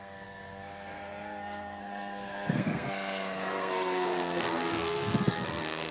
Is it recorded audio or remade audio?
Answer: remade